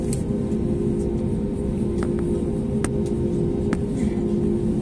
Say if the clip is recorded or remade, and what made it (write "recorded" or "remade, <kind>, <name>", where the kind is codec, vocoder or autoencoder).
recorded